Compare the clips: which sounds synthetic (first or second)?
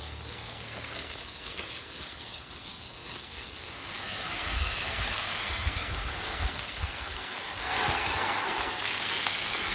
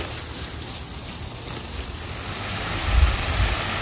first